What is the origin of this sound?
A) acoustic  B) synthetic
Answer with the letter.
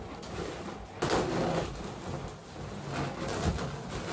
A